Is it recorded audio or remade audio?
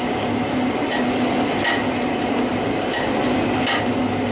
recorded